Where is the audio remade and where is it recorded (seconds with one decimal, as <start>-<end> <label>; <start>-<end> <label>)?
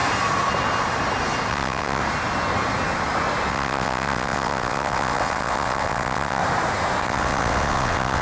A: 0.0-1.5 recorded; 1.5-2.0 remade; 2.0-3.5 recorded; 3.5-6.4 remade; 6.4-7.0 recorded; 7.0-8.2 remade